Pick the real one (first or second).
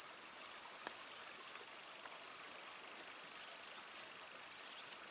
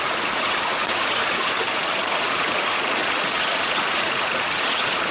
first